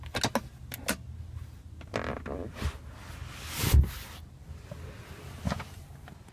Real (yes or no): yes